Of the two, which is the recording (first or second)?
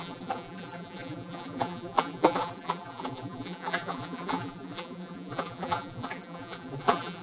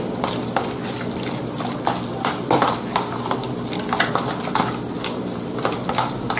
second